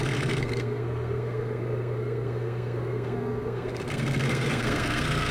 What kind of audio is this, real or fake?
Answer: fake